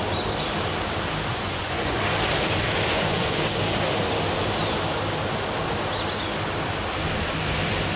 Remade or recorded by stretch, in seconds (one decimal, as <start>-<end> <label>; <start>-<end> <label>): 0.0-1.3 recorded; 1.3-2.0 remade; 2.0-2.9 recorded; 2.9-3.4 remade; 3.4-8.0 recorded